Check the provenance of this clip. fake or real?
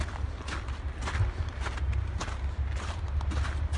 real